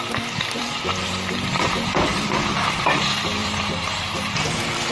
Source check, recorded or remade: remade